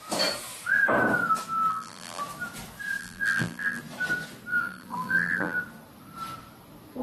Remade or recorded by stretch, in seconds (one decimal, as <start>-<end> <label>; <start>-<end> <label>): 0.0-1.7 recorded; 1.7-2.2 remade; 2.2-3.0 recorded; 3.0-3.8 remade; 3.8-4.5 recorded; 4.5-5.6 remade; 5.6-7.0 recorded